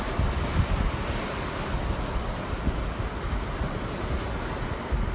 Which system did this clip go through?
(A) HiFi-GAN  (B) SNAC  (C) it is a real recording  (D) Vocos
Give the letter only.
C